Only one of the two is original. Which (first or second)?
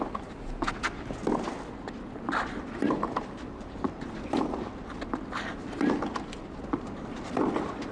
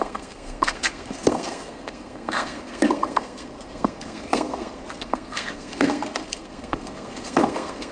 first